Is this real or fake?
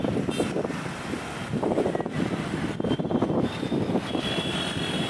fake